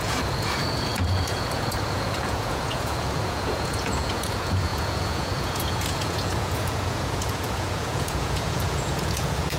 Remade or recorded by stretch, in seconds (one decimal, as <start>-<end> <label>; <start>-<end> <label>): 0.0-9.6 remade